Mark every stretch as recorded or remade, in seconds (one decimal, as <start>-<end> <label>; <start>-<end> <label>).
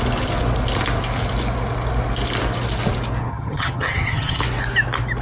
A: 0.0-3.3 recorded; 3.3-4.4 remade; 4.4-5.2 recorded